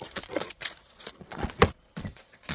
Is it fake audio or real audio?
fake